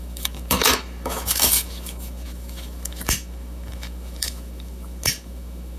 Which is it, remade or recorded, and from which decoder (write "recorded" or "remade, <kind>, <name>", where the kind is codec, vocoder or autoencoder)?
remade, autoencoder, DAC-VAE